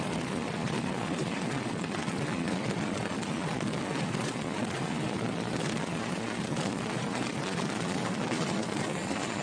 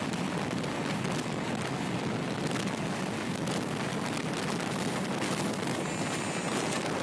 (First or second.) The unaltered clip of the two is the second